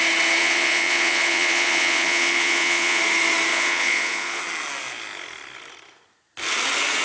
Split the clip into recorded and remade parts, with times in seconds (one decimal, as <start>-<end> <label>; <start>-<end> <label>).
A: 0.0-0.4 recorded; 0.4-3.0 remade; 3.0-3.5 recorded; 3.5-4.4 remade; 4.4-7.0 recorded